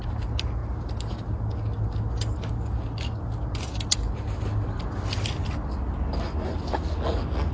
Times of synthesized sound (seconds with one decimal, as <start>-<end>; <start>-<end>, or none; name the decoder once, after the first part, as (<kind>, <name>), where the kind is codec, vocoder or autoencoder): none